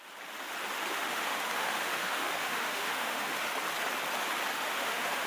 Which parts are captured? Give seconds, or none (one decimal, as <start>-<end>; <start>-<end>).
0.0-0.9; 3.5-4.5